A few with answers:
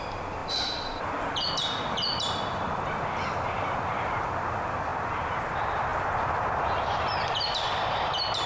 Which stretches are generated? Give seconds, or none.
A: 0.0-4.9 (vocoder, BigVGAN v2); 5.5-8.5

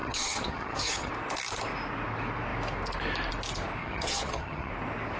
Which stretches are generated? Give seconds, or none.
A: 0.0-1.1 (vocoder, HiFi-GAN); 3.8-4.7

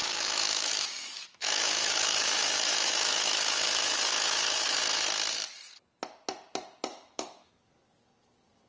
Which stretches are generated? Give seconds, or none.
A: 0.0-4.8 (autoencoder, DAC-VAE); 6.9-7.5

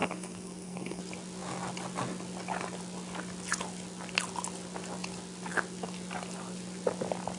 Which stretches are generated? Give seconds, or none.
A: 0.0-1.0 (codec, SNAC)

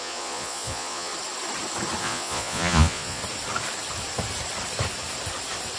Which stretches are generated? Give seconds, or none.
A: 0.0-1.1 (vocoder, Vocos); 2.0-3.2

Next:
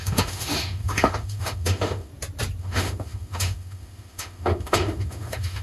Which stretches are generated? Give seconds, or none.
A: 0.0-2.1 (autoencoder, DAC-VAE); 2.6-5.6